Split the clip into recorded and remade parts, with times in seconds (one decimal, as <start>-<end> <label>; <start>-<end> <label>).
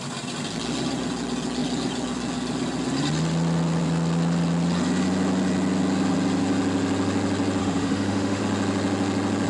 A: 0.0-7.6 recorded; 7.6-8.4 remade; 8.4-9.5 recorded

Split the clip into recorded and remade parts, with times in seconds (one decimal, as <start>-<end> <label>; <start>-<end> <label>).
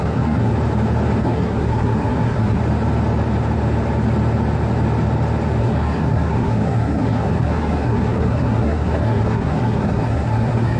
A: 0.0-0.5 remade; 0.5-1.2 recorded; 1.2-2.6 remade; 2.6-5.6 recorded; 5.6-10.8 remade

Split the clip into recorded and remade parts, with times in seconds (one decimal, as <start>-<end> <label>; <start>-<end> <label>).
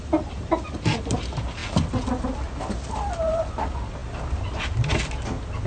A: 0.0-5.7 recorded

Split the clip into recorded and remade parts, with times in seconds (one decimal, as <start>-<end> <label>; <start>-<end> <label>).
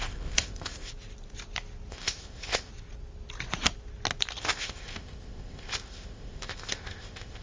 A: 0.0-0.9 remade; 0.9-1.9 recorded; 1.9-2.7 remade; 2.7-4.4 recorded; 4.4-7.4 remade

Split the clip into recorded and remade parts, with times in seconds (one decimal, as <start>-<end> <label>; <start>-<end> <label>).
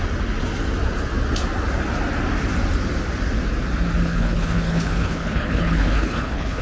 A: 0.0-4.1 recorded; 4.1-6.6 remade